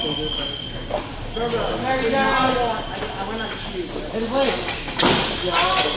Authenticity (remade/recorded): recorded